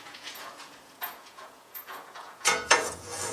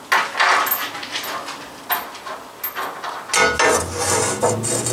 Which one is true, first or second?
second